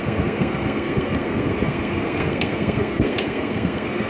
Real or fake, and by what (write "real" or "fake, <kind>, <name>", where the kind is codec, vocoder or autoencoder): fake, codec, SNAC